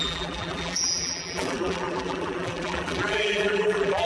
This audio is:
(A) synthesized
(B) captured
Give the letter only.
A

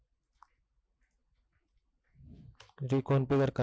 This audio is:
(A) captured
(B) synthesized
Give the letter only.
A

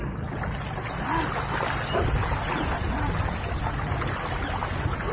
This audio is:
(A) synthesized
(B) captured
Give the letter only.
B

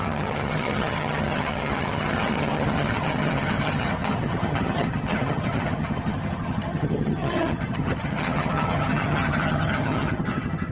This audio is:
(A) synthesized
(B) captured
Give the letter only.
A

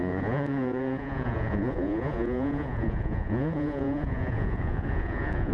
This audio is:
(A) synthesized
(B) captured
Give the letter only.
A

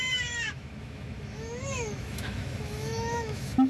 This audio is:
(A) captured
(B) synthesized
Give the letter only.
B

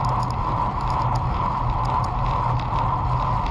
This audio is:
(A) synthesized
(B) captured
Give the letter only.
B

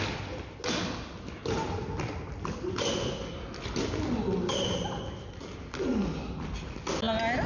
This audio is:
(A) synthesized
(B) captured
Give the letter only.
B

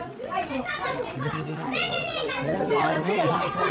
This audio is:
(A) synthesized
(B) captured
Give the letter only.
A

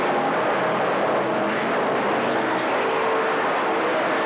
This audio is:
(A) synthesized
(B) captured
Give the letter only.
B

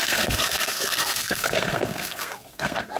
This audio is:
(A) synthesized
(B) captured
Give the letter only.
A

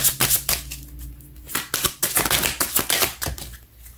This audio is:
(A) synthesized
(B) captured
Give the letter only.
B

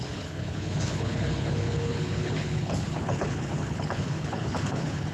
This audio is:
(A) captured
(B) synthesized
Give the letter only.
B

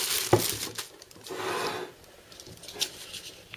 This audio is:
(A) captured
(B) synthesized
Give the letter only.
A